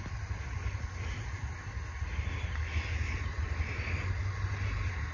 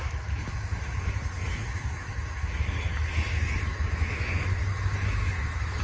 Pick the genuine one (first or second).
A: first